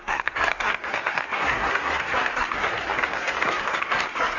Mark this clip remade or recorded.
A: remade